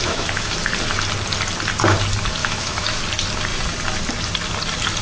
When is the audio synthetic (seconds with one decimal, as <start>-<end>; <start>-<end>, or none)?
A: 0.0-0.6; 2.4-3.0